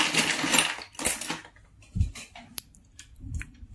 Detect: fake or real real